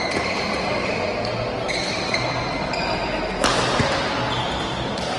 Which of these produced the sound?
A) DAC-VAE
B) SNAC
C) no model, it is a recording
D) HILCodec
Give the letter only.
C